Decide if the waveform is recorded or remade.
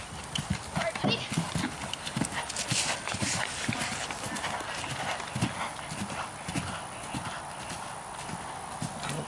recorded